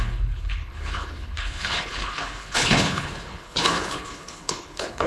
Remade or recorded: remade